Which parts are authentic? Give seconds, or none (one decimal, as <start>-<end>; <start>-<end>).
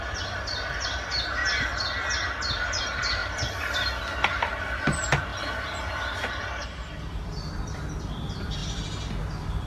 1.4-2.8; 3.2-4.0; 5.3-6.3; 8.6-9.2